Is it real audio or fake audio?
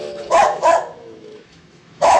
fake